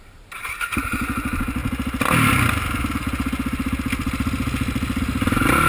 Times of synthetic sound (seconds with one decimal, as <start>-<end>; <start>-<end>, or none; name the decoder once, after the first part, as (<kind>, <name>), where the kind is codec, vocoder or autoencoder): 0.0-1.6 (vocoder, BigVGAN v2); 5.0-5.7